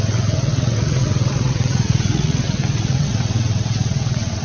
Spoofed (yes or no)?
yes